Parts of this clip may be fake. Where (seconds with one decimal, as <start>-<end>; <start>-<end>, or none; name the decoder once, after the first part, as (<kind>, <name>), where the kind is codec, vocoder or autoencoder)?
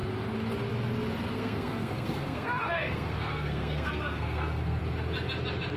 1.3-4.8 (codec, SNAC)